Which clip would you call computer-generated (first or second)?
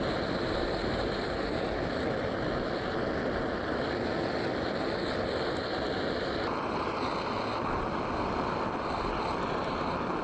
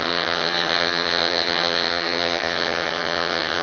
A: second